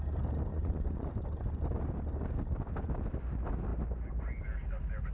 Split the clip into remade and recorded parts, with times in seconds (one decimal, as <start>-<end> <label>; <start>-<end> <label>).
0.0-0.5 recorded; 0.5-1.1 remade; 1.1-5.1 recorded